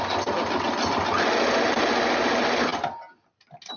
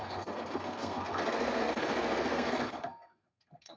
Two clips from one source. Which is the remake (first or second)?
second